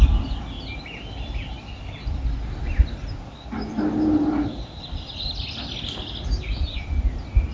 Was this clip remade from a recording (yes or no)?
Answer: no